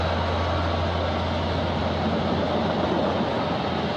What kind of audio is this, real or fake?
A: real